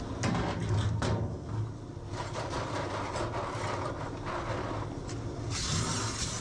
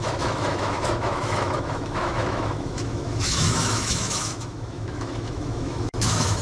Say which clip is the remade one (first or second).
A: second